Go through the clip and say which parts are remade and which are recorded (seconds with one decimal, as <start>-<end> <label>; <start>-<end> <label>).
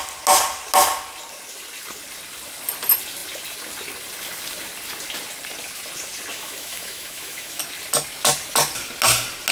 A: 0.0-6.3 recorded; 6.3-7.6 remade; 7.6-9.5 recorded